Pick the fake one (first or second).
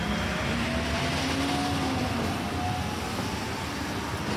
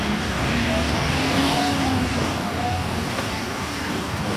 second